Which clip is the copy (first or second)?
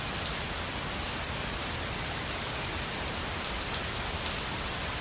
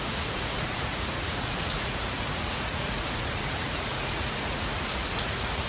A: second